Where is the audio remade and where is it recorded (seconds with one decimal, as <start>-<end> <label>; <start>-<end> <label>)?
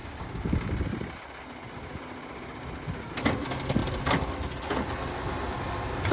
0.0-0.7 remade; 0.7-6.1 recorded